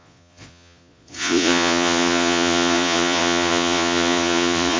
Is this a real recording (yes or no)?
no